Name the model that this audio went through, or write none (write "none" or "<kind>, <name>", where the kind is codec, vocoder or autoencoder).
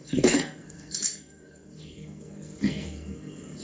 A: codec, SNAC